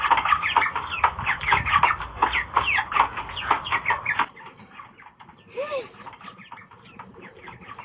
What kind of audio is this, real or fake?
real